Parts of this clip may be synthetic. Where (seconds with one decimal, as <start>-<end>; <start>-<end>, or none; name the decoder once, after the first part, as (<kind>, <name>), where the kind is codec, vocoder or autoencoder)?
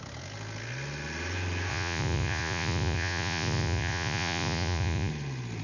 1.7-5.1 (vocoder, Vocos)